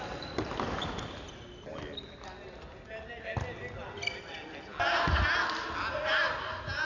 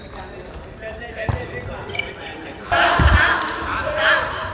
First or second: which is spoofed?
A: second